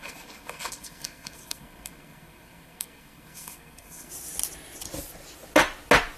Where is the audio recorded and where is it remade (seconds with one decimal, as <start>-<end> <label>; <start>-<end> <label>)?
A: 0.0-4.1 remade; 4.1-6.2 recorded